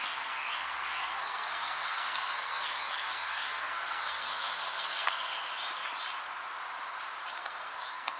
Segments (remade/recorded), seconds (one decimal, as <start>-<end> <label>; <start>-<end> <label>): 0.0-5.4 remade; 5.4-7.3 recorded; 7.3-8.2 remade